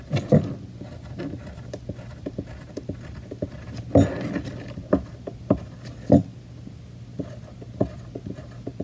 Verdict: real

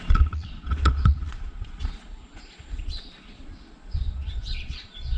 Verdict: fake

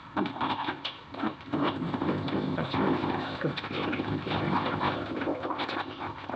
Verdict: fake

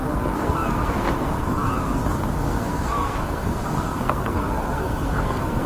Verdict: fake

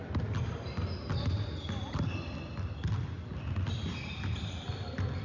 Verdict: real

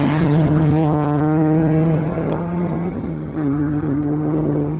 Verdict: fake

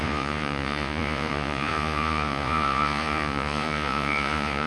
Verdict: fake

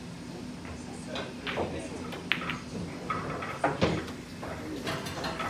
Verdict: real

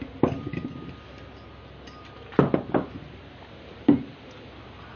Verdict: real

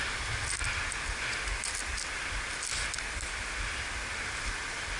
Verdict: real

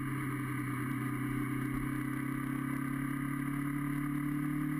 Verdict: real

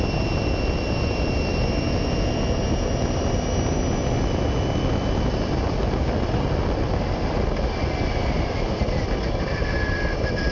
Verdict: real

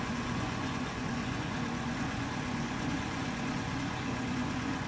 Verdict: fake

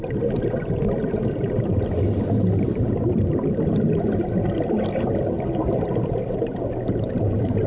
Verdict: real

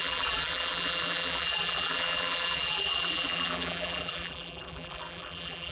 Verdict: fake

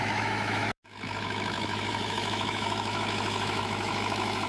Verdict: fake